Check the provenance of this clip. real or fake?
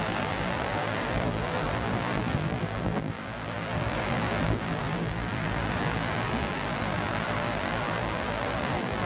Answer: fake